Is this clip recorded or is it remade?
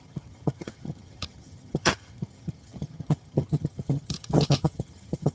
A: remade